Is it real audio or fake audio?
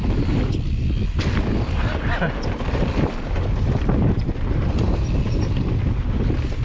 real